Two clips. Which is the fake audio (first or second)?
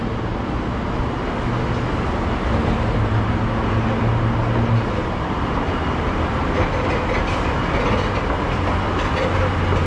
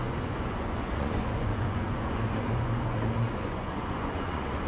second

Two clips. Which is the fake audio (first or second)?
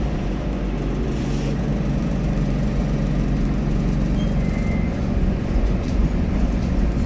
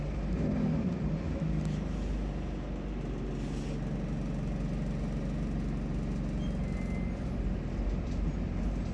first